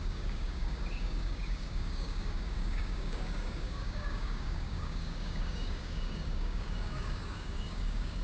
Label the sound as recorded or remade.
remade